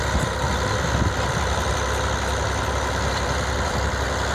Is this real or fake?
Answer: fake